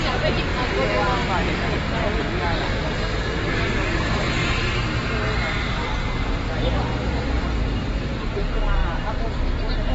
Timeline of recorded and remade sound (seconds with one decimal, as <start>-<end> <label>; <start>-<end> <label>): 0.0-9.9 recorded